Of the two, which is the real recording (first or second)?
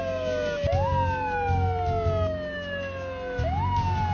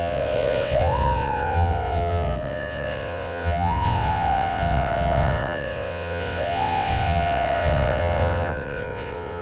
first